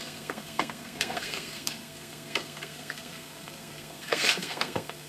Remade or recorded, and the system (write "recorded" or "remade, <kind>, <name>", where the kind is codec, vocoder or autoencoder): remade, codec, SNAC